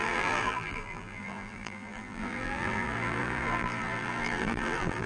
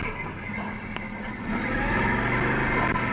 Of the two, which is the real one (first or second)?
second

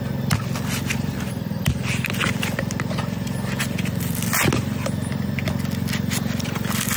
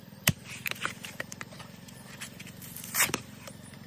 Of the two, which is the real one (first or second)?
first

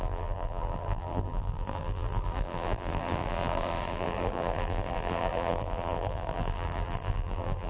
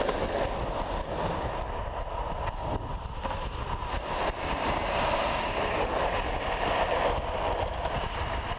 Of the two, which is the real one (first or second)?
second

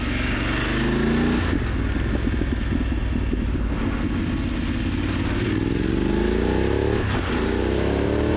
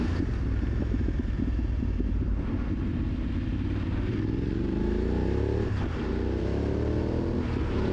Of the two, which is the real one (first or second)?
first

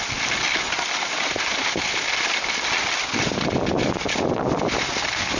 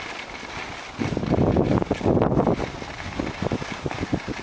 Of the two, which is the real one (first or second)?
second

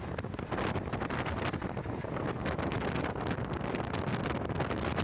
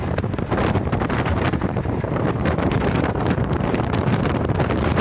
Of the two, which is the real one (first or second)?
first